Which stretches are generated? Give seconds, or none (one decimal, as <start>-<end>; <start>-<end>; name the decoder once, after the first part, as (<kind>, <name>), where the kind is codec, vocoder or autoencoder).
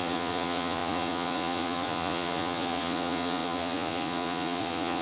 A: 0.0-5.0 (vocoder, Vocos)